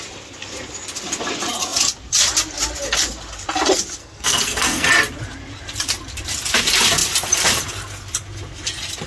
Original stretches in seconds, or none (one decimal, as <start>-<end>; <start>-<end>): 0.0-4.0; 4.9-9.1